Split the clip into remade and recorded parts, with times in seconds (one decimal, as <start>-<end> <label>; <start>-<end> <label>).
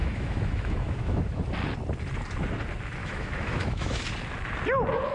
0.0-1.4 remade; 1.4-3.0 recorded; 3.0-4.0 remade; 4.0-5.1 recorded